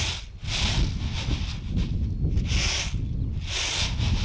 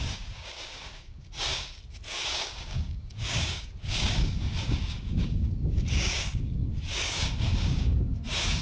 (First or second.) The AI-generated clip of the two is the second